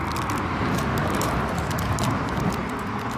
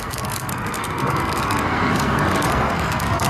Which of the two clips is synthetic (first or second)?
second